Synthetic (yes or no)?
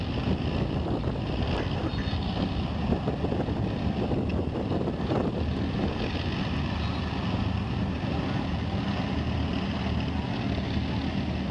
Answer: no